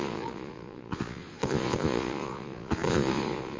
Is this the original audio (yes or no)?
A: no